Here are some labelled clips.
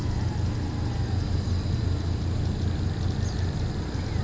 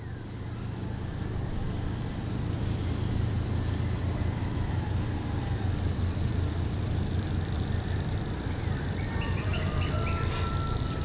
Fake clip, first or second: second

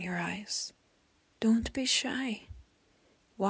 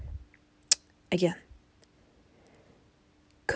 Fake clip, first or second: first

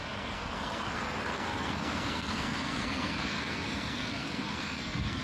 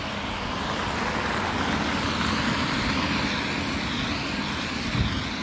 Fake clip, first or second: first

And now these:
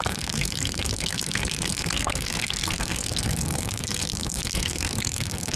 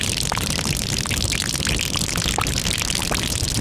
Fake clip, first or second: first